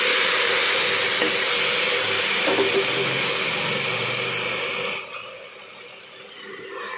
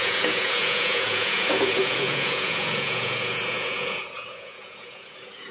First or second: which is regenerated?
second